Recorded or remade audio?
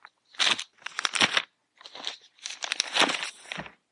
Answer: recorded